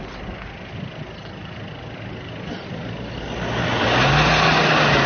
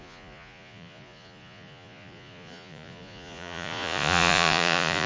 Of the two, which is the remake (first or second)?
second